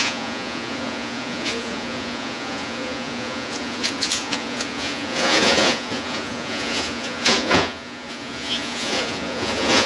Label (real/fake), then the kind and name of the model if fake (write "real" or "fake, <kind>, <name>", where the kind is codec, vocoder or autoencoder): fake, vocoder, Vocos